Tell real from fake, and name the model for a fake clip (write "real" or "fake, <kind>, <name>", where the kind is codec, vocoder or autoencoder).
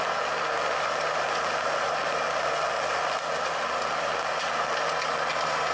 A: real